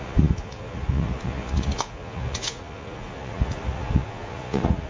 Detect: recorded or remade remade